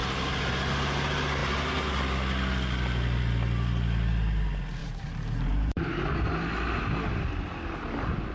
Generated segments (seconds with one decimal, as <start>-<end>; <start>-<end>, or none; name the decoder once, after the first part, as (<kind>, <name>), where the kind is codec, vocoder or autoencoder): 4.8-6.3 (vocoder, BigVGAN v2)